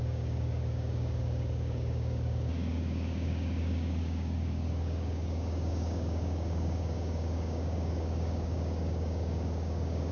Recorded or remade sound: remade